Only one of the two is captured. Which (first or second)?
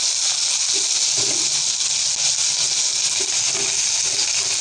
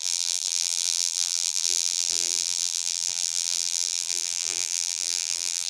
first